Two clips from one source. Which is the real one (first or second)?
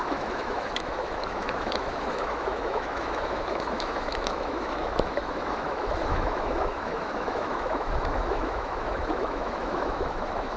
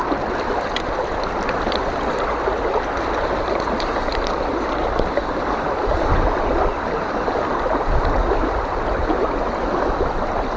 second